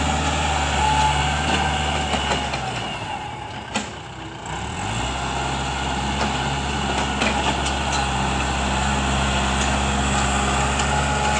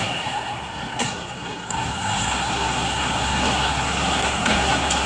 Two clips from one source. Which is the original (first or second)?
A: first